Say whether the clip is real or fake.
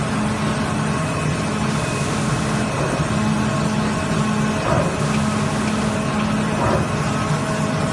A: real